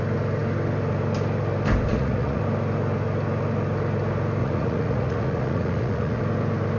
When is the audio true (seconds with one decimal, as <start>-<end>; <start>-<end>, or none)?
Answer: 0.0-1.9; 2.4-4.4; 6.2-6.8